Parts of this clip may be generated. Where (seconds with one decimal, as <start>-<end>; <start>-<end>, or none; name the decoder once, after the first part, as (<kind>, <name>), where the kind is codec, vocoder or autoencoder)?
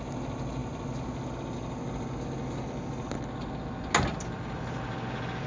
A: none